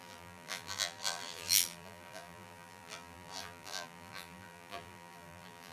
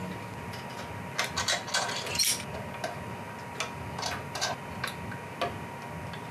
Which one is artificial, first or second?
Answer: first